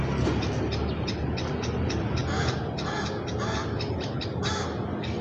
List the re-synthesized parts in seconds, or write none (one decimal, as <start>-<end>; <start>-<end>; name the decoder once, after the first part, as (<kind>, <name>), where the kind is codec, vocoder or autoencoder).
none